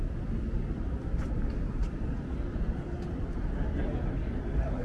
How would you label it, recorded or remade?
recorded